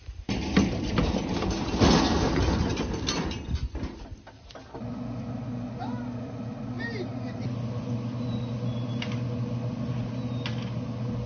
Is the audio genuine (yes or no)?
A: yes